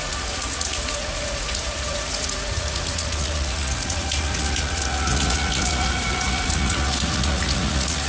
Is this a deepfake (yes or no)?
yes